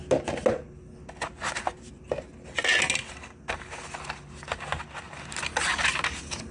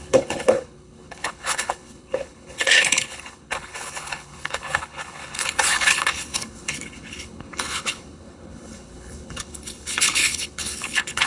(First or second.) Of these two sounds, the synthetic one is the second